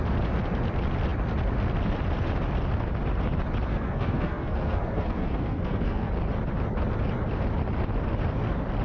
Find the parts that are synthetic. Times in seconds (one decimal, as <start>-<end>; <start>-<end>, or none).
3.7-6.1